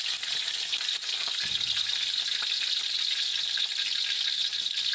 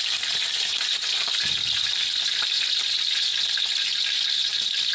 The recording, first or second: first